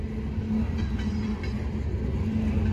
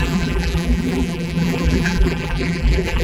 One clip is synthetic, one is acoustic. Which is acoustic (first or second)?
first